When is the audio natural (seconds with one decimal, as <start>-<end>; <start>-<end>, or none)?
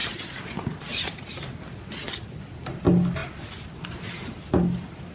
0.0-5.1